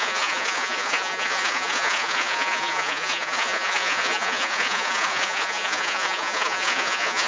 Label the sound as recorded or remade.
remade